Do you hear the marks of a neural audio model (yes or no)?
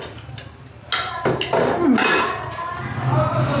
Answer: no